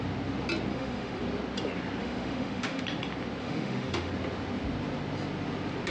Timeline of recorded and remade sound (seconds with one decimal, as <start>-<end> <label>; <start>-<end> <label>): 0.0-0.7 recorded; 0.7-1.2 remade; 1.2-2.0 recorded; 2.0-2.8 remade; 2.8-3.4 recorded; 3.4-4.1 remade; 4.1-5.9 recorded

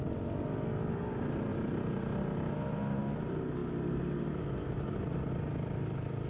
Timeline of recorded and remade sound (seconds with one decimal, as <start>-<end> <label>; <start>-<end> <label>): 0.0-6.3 recorded

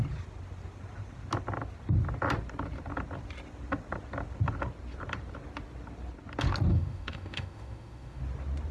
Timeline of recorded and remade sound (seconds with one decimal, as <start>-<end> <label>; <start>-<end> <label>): 0.0-6.7 recorded; 6.7-8.2 remade; 8.2-8.7 recorded

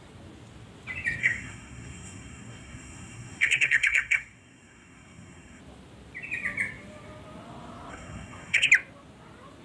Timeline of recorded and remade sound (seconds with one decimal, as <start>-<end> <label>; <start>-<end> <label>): 0.0-1.2 recorded; 1.2-5.6 remade; 5.6-7.9 recorded; 7.9-8.7 remade; 8.7-9.6 recorded

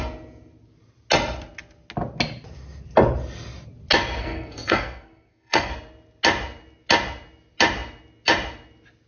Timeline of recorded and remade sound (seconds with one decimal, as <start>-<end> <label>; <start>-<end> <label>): 0.0-4.2 recorded; 4.2-5.7 remade; 5.7-9.1 recorded